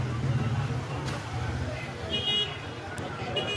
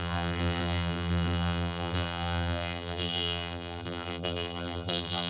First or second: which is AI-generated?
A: second